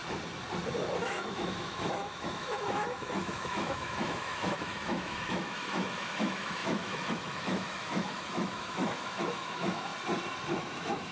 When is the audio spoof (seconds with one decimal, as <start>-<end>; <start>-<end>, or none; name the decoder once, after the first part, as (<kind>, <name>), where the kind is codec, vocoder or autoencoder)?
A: 1.0-9.9 (autoencoder, DAC-VAE); 10.5-11.1